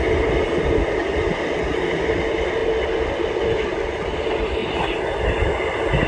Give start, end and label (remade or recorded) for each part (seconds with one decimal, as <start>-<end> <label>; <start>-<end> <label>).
0.0-6.1 recorded

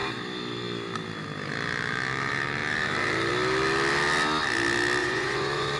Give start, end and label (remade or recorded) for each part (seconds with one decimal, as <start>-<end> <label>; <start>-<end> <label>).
0.0-5.0 recorded; 5.0-5.8 remade

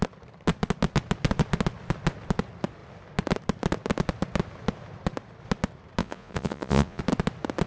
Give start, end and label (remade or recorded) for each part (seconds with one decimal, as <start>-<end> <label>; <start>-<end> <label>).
0.0-6.0 recorded; 6.0-7.0 remade; 7.0-7.7 recorded

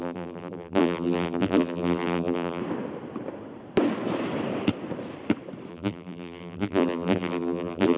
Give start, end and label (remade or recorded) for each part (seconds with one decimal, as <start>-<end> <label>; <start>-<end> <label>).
0.0-2.6 remade; 2.6-5.7 recorded; 5.7-8.0 remade

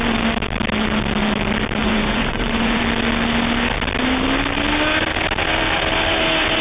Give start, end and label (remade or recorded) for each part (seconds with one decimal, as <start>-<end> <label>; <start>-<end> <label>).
0.0-1.8 recorded; 1.8-2.8 remade; 2.8-6.6 recorded

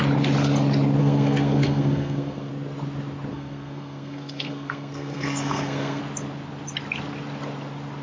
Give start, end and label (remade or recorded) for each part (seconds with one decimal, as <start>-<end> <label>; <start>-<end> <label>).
0.0-1.0 recorded; 1.0-2.5 remade; 2.5-3.3 recorded; 3.3-6.0 remade; 6.0-8.0 recorded

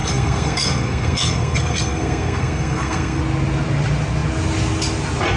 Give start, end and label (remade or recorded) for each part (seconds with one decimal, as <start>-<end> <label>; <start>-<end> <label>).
0.0-3.2 remade; 3.2-5.4 recorded